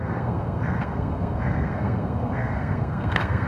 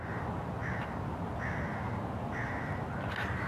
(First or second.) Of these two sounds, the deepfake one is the first